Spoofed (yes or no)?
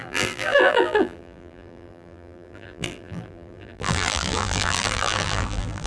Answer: yes